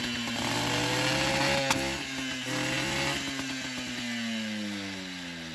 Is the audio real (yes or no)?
yes